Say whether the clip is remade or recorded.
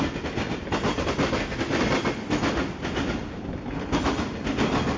recorded